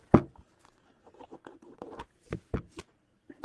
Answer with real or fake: fake